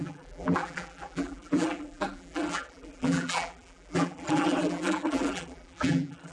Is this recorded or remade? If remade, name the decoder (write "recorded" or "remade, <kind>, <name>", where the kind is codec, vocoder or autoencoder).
remade, vocoder, BigVGAN v2